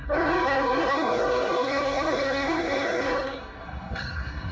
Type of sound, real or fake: fake